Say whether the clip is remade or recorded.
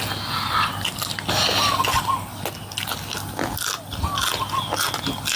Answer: recorded